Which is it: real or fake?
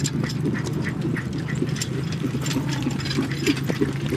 fake